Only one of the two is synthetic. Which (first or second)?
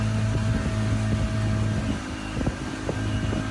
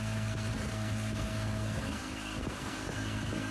second